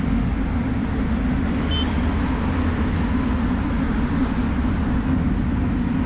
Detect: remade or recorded recorded